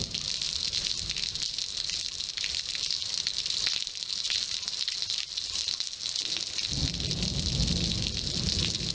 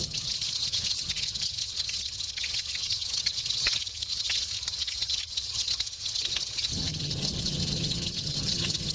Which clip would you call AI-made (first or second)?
second